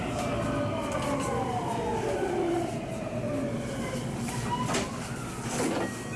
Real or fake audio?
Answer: real